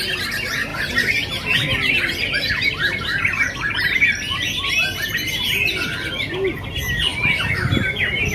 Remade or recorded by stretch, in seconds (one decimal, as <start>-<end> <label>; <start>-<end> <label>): 0.0-8.3 recorded